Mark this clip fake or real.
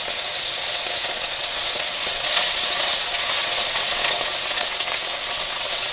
fake